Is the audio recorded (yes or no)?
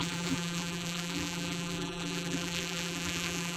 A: no